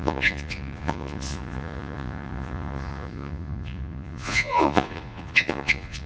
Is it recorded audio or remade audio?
remade